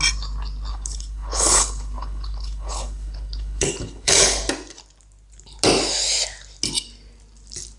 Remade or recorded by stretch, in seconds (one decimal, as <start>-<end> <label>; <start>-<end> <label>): 0.0-0.7 recorded; 0.7-4.4 remade; 4.4-7.8 recorded

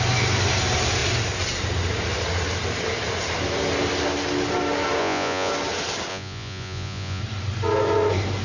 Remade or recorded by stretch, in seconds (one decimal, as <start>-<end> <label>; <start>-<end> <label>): 0.0-5.0 recorded; 5.0-5.5 remade; 5.5-6.1 recorded; 6.1-7.2 remade; 7.2-8.4 recorded

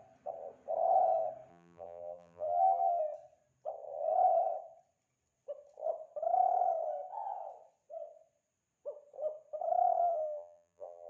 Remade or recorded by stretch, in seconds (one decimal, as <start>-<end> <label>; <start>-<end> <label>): 0.0-1.5 recorded; 1.5-3.0 remade; 3.0-10.0 recorded; 10.0-11.1 remade

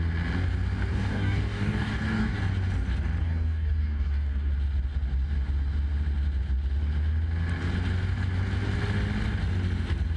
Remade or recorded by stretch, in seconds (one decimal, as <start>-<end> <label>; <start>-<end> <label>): 0.0-0.9 recorded; 0.9-2.4 remade; 2.4-3.2 recorded; 3.2-4.5 remade; 4.5-10.2 recorded

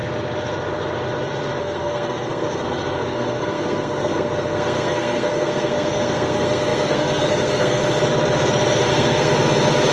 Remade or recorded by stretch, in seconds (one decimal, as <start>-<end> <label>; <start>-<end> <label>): 0.0-1.6 recorded; 1.6-7.8 remade; 7.8-8.9 recorded; 8.9-9.3 remade; 9.3-9.9 recorded

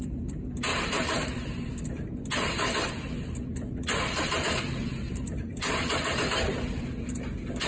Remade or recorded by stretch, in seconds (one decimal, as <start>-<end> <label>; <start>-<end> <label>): 0.0-0.7 recorded; 0.7-1.7 remade; 1.7-3.5 recorded; 3.5-5.8 remade; 5.8-7.7 recorded

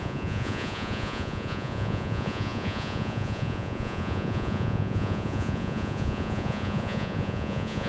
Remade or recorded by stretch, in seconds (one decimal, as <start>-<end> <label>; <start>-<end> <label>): 0.0-7.9 remade

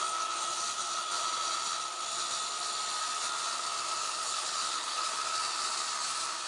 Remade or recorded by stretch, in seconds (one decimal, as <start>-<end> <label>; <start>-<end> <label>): 0.0-4.0 recorded; 4.0-5.3 remade; 5.3-6.5 recorded